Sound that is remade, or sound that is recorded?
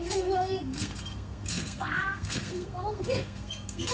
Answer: remade